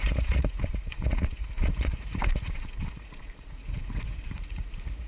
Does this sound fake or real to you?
fake